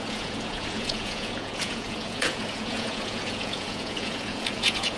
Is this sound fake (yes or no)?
yes